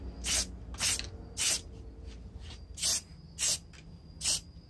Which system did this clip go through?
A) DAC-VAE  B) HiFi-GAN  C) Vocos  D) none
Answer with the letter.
D